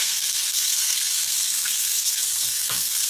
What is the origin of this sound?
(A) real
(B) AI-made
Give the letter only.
B